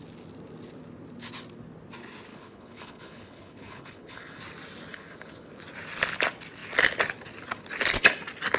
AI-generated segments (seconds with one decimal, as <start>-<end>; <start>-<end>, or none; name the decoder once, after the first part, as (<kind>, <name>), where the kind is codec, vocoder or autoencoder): 2.3-4.4 (codec, HILCodec); 4.9-5.5